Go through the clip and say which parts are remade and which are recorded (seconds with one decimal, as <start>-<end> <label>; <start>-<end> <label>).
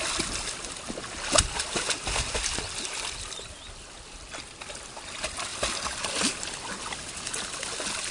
0.0-8.1 recorded